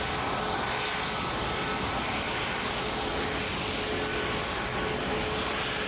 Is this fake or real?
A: real